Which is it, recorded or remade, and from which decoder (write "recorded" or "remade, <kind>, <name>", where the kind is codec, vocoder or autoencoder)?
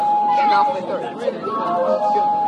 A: remade, vocoder, BigVGAN v2